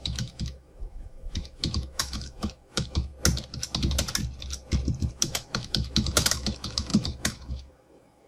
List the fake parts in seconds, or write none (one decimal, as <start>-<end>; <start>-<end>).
0.0-3.1; 5.1-8.3